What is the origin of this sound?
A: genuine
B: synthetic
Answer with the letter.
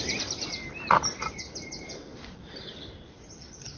B